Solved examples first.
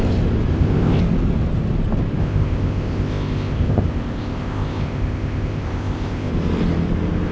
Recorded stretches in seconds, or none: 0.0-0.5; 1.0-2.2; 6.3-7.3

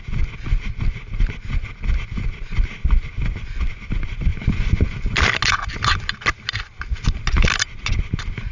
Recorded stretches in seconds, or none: 0.0-8.5

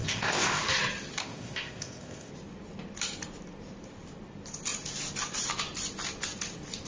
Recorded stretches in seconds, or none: 0.6-1.2; 2.3-6.9

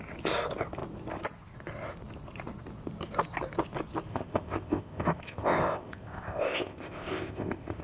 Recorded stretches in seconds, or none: 0.0-4.1

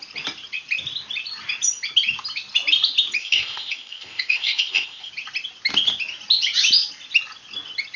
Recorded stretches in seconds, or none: 0.0-3.2; 5.1-8.0